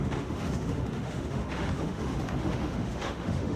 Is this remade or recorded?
remade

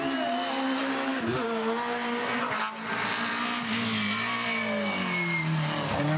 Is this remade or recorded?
recorded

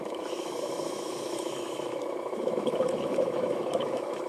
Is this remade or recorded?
remade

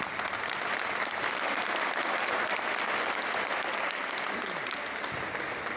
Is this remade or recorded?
recorded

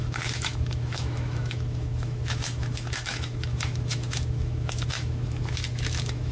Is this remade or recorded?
remade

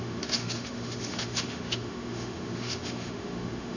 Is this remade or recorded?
remade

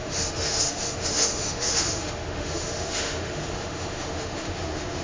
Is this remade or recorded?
remade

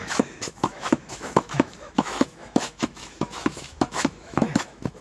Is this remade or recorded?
remade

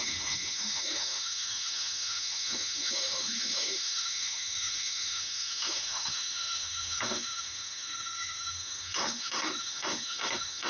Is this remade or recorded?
remade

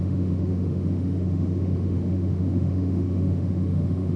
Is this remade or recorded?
remade